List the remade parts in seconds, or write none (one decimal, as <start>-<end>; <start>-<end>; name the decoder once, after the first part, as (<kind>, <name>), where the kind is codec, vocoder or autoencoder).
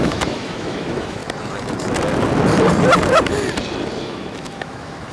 0.0-1.2 (autoencoder, DAC-VAE); 4.0-5.1